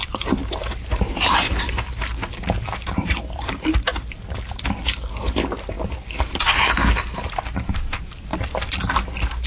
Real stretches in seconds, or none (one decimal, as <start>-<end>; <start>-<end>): 2.1-3.1; 3.9-7.6; 8.3-9.5